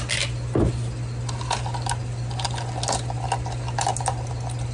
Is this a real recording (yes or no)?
yes